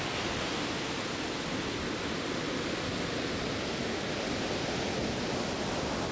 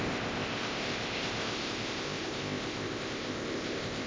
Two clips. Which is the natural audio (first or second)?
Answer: first